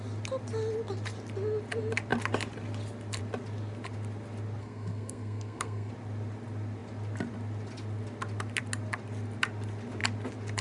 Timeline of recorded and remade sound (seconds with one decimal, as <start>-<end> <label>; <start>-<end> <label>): 0.0-4.6 recorded; 4.6-5.9 remade; 5.9-10.6 recorded